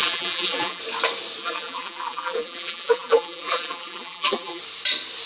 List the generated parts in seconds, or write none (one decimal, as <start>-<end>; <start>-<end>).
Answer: 0.0-0.8; 1.4-4.6